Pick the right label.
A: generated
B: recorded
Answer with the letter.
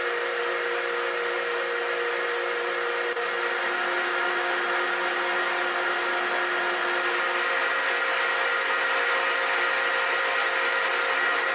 B